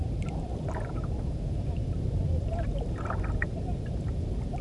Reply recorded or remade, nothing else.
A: remade